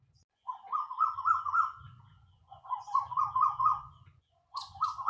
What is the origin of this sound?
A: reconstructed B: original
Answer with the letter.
A